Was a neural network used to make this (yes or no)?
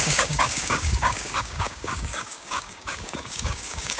yes